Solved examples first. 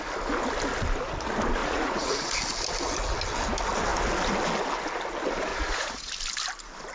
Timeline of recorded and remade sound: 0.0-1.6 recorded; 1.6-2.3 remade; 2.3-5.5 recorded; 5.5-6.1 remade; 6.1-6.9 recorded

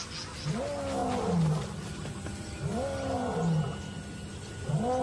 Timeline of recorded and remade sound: 0.0-5.0 recorded

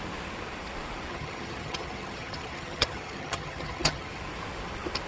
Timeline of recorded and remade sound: 0.0-1.1 recorded; 1.1-4.2 remade; 4.2-5.1 recorded

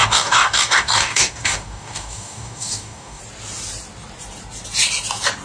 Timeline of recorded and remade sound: 0.0-3.2 remade; 3.2-5.4 recorded

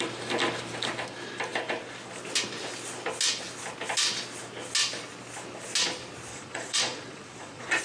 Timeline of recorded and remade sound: 0.0-6.3 recorded; 6.3-7.8 remade

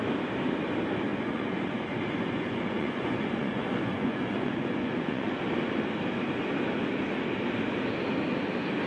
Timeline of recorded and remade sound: 0.0-1.1 recorded; 1.1-5.4 remade; 5.4-8.9 recorded

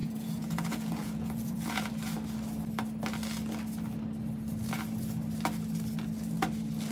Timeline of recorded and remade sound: 0.0-1.9 remade; 1.9-6.9 recorded